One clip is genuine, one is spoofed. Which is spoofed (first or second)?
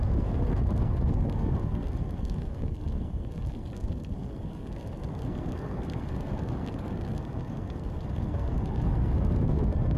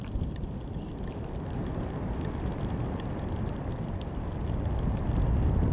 first